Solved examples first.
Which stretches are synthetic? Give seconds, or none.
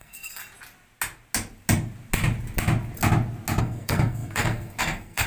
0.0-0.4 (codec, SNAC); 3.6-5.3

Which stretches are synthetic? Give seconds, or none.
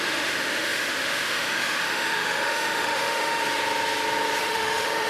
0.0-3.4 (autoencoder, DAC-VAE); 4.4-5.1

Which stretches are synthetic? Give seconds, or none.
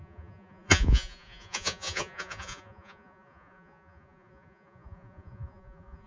0.0-6.1 (vocoder, Vocos)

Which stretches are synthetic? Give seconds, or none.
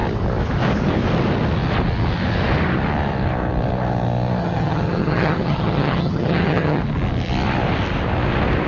4.4-6.8 (vocoder, HiFi-GAN)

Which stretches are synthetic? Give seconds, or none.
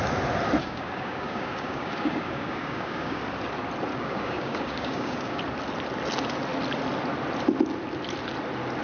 0.6-3.2 (codec, DAC); 3.9-5.4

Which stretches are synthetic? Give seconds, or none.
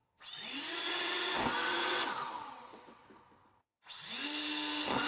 0.0-3.1 (vocoder, WaveNeXt); 3.5-4.1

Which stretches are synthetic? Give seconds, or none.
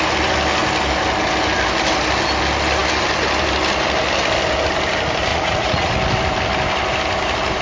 5.3-5.9 (vocoder, Vocos)